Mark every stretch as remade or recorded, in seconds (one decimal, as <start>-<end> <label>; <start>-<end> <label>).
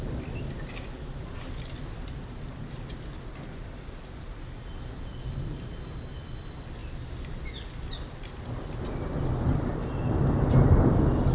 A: 0.0-11.3 recorded